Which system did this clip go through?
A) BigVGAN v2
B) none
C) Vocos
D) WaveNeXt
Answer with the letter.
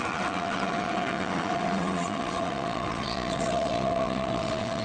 D